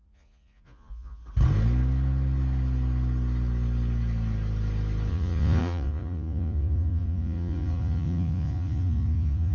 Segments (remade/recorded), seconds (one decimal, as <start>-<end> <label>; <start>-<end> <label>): 0.0-1.2 remade; 1.2-5.1 recorded; 5.1-9.5 remade